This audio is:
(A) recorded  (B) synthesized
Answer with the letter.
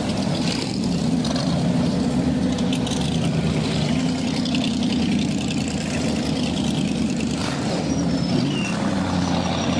A